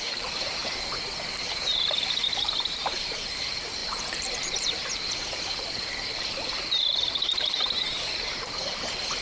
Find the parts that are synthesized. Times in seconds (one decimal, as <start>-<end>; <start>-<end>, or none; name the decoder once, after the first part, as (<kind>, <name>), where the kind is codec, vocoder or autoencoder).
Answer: 0.0-0.6 (vocoder, BigVGAN v2); 1.5-8.3